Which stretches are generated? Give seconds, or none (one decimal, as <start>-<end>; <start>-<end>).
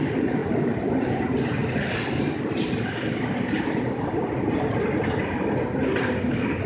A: 1.6-5.1